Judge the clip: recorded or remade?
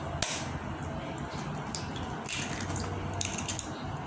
recorded